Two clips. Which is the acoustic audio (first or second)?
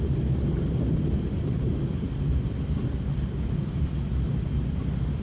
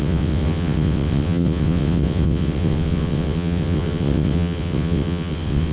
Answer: first